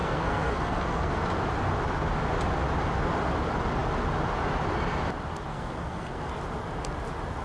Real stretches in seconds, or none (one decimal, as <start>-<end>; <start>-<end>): 1.2-5.5; 6.3-7.4